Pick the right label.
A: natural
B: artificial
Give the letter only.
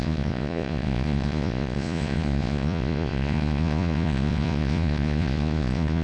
B